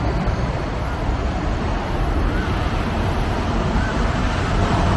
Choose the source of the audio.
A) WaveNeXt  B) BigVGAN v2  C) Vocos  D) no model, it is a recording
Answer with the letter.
B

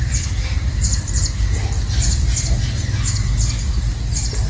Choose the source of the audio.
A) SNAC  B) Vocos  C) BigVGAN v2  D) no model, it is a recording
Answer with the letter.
D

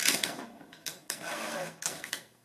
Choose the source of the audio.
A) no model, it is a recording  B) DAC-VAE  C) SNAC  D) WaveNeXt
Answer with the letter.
C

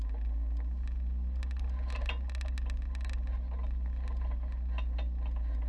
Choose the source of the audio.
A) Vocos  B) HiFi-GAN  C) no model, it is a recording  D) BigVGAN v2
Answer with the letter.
C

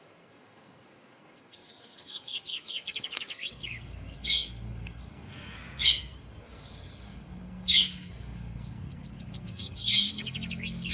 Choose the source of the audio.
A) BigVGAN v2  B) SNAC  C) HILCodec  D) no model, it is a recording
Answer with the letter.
B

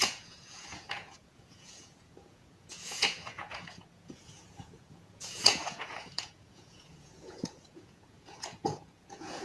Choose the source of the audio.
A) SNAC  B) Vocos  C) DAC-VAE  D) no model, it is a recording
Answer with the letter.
B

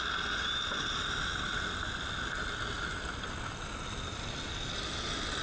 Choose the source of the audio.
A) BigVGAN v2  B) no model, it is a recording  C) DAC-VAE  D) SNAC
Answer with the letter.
B